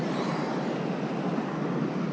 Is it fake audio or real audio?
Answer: real